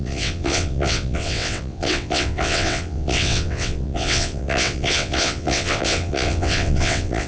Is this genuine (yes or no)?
no